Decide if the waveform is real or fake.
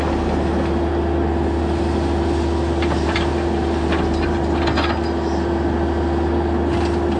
real